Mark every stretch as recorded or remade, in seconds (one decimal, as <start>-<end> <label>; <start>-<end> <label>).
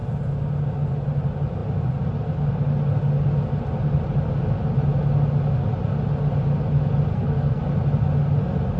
0.0-7.1 recorded; 7.1-7.6 remade; 7.6-8.8 recorded